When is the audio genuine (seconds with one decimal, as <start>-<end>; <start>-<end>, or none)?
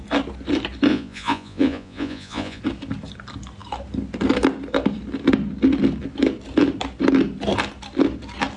0.0-0.9; 2.6-8.6